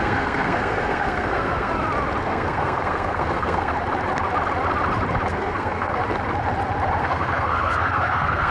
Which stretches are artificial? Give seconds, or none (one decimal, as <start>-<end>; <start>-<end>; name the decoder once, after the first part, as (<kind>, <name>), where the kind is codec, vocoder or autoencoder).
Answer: 0.0-1.7 (codec, SNAC); 2.2-3.7; 5.3-6.0; 7.0-8.5